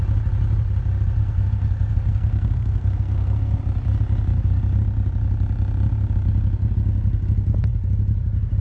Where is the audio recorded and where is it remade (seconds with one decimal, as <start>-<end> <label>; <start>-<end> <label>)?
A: 0.0-1.2 recorded; 1.2-3.6 remade; 3.6-8.6 recorded